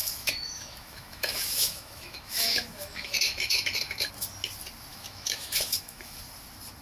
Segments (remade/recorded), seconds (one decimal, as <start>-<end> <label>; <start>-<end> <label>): 0.0-4.1 remade; 4.1-4.9 recorded; 4.9-6.2 remade; 6.2-6.8 recorded